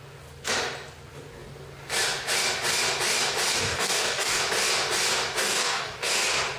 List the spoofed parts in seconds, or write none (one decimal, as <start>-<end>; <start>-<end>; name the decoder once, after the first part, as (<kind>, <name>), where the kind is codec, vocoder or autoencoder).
3.5-4.4 (codec, DAC); 5.4-6.1